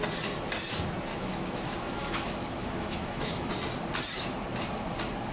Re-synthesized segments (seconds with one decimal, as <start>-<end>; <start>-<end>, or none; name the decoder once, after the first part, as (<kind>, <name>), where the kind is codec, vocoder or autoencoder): 1.1-3.5 (autoencoder, DAC-VAE)